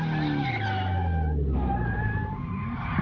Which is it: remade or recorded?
recorded